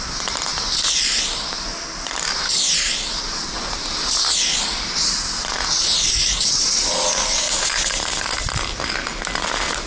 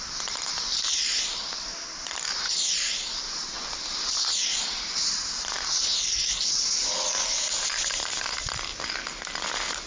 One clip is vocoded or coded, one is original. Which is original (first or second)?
first